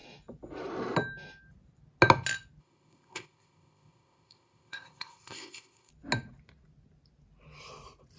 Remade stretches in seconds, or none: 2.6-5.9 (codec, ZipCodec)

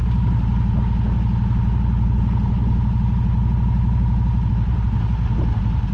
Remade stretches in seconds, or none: none